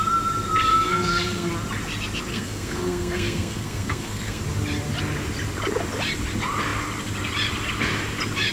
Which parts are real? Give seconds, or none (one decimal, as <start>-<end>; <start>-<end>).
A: 0.0-0.7; 1.5-2.3; 4.4-8.5